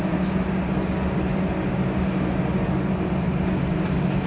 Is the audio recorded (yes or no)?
yes